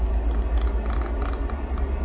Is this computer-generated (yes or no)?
no